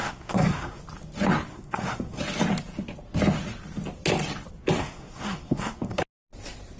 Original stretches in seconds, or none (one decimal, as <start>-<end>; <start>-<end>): 0.8-1.5; 2.2-4.8; 6.0-6.8